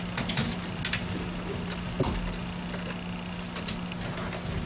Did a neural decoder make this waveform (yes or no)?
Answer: no